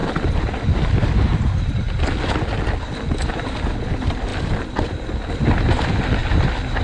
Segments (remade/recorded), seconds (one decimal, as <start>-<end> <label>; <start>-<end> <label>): 0.0-6.8 recorded